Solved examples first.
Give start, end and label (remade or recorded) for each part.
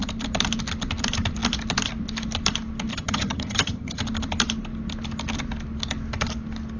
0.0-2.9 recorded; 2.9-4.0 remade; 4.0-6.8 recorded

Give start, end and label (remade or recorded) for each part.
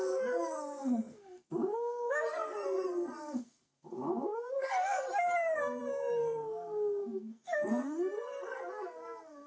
0.0-9.5 remade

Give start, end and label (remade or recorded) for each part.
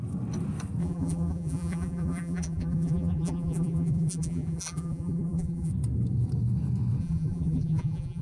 0.0-0.8 recorded; 0.8-5.7 remade; 5.7-7.0 recorded; 7.0-8.2 remade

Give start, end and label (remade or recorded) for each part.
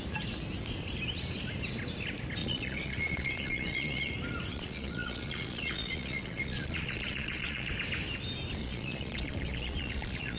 0.0-2.4 recorded; 2.4-4.1 remade; 4.1-4.5 recorded; 4.5-7.7 remade; 7.7-8.6 recorded; 8.6-10.4 remade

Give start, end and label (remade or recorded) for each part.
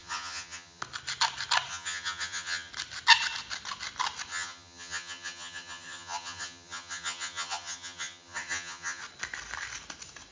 0.0-0.8 remade; 0.8-1.7 recorded; 1.7-2.7 remade; 2.7-4.3 recorded; 4.3-9.0 remade; 9.0-10.3 recorded